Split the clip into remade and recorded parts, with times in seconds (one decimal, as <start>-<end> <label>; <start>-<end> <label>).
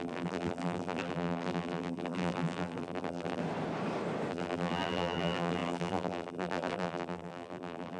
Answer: 0.0-3.4 remade; 3.4-4.3 recorded; 4.3-8.0 remade